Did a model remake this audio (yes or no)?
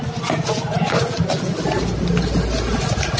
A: no